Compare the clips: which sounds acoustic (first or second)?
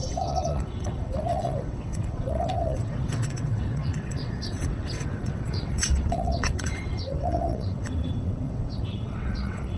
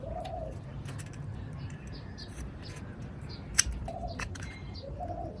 second